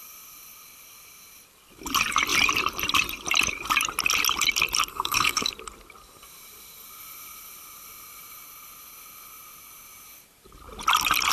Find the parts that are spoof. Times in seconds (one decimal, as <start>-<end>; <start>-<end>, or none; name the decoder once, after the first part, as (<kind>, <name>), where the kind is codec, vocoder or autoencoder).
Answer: 4.9-5.5 (codec, SNAC)